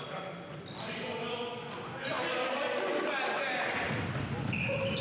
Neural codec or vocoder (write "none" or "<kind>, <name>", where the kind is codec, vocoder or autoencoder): none